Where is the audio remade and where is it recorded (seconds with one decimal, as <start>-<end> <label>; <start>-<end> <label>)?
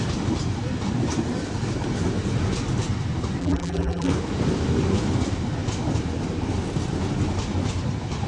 0.0-3.4 recorded; 3.4-4.1 remade; 4.1-8.3 recorded